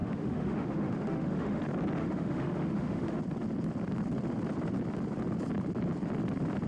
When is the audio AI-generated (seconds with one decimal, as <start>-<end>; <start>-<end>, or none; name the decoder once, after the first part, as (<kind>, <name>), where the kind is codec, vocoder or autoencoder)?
0.0-1.6 (autoencoder, DAC-VAE); 2.0-3.2